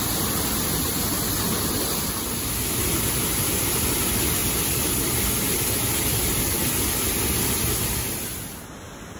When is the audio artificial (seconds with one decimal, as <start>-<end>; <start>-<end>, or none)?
none